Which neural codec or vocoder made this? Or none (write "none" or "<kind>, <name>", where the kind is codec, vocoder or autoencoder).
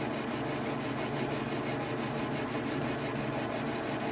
none